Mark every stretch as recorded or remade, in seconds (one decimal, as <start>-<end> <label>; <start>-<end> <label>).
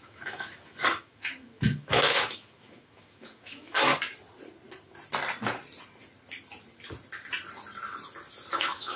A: 0.0-3.9 remade; 3.9-8.6 recorded; 8.6-9.0 remade